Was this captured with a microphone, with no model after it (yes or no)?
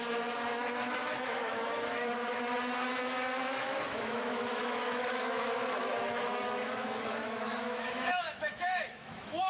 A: no